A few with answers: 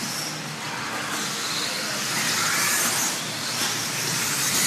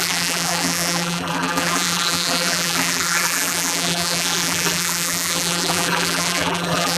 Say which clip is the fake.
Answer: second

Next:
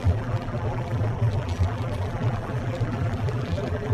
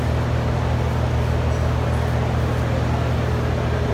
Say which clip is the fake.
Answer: first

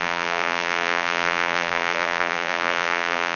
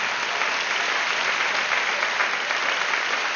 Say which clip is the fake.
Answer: first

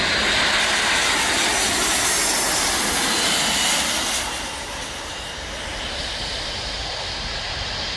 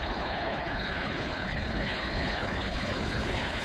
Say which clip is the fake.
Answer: second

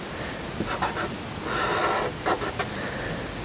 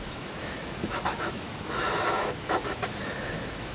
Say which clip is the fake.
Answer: second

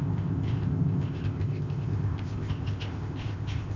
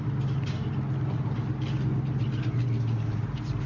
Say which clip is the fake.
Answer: first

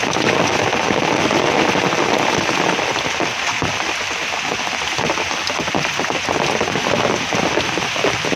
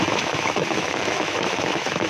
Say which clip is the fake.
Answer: second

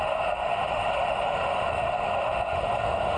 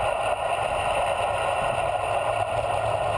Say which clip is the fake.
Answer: first